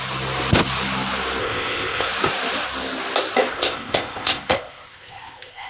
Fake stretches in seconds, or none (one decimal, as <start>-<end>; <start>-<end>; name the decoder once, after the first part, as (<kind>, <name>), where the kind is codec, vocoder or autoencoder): 1.4-2.1 (codec, ZipCodec); 3.5-5.7